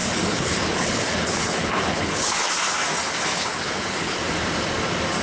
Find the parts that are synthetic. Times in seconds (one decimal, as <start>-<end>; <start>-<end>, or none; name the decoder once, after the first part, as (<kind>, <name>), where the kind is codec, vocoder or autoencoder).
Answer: 0.0-2.5 (codec, HILCodec); 3.3-4.2